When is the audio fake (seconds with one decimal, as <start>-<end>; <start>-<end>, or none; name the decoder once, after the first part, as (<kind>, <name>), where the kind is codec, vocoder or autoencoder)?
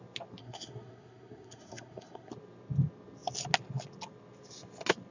0.4-2.3 (codec, SNAC)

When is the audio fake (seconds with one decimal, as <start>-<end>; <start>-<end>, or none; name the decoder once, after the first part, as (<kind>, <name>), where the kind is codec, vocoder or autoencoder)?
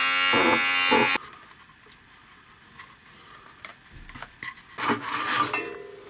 none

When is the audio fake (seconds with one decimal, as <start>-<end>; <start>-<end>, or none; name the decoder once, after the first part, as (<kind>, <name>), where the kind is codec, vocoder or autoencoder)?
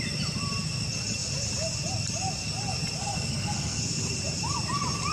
3.0-3.8 (codec, SNAC)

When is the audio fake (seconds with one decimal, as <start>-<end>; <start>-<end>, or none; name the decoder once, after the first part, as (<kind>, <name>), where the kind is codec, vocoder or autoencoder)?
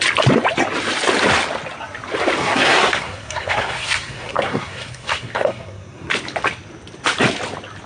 2.4-6.1 (codec, SNAC)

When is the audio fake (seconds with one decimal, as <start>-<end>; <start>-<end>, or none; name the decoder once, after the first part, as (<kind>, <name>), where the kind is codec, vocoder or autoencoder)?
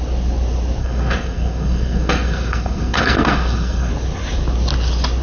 0.8-3.9 (codec, SNAC)